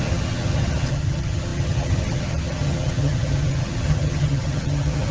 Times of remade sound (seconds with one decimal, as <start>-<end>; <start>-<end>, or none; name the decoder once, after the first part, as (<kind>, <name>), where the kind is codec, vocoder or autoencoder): 0.0-5.1 (vocoder, HiFi-GAN)